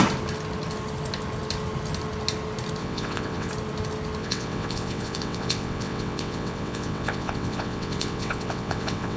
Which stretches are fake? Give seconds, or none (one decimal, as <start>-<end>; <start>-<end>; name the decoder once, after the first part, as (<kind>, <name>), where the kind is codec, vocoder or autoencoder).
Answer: 2.8-3.5 (vocoder, WaveNeXt); 4.2-9.2